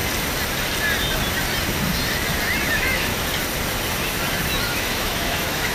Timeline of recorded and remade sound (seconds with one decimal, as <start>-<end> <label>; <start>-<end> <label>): 0.0-2.7 recorded; 2.7-3.1 remade; 3.1-4.6 recorded; 4.6-5.7 remade

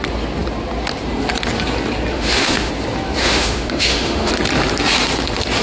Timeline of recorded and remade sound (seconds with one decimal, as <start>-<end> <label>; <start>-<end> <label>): 0.0-2.1 recorded; 2.1-2.7 remade; 2.7-3.2 recorded; 3.2-4.3 remade; 4.3-5.6 recorded

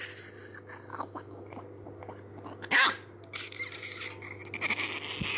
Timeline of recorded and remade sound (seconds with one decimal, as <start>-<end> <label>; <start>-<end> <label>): 0.0-0.9 recorded; 0.9-1.4 remade; 1.4-5.4 recorded

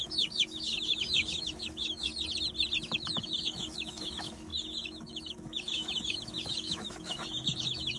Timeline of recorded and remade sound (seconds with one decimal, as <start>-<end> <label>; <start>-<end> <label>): 0.0-2.1 remade; 2.1-2.8 recorded; 2.8-8.0 remade

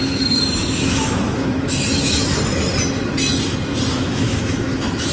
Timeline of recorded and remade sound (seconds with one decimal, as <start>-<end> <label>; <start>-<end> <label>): 0.0-0.6 recorded; 0.6-2.3 remade; 2.3-3.9 recorded; 3.9-5.1 remade

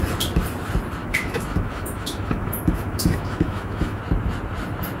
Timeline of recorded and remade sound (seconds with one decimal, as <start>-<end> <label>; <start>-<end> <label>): 0.0-1.0 recorded; 1.0-4.0 remade; 4.0-5.0 recorded

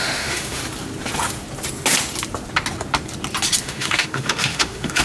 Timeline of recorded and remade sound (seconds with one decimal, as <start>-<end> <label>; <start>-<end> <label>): 0.0-0.6 remade; 0.6-3.6 recorded; 3.6-5.0 remade

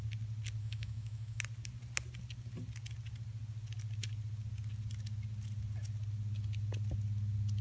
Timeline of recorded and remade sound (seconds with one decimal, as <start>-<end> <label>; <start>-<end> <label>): 0.0-0.6 recorded; 0.6-1.4 remade; 1.4-7.6 recorded